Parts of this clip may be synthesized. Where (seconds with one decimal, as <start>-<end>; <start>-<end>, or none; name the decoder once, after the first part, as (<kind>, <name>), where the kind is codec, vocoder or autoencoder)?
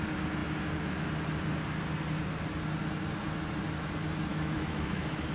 4.3-5.3 (autoencoder, DAC-VAE)